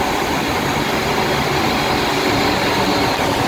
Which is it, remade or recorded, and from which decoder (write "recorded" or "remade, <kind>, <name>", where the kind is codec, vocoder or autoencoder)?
recorded